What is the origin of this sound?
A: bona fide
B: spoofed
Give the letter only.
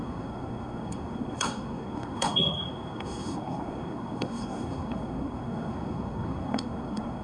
B